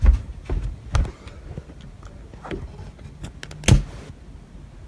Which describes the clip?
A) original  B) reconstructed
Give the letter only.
A